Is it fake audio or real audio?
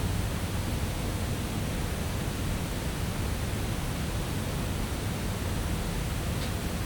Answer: real